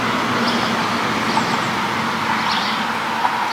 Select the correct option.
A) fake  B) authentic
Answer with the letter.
B